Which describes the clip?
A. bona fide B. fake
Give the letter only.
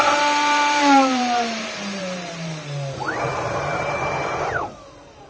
B